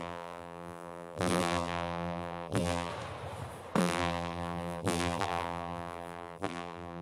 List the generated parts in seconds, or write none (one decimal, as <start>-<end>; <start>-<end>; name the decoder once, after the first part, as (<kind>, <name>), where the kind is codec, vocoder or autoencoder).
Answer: 0.0-2.9 (vocoder, BigVGAN v2); 3.8-7.0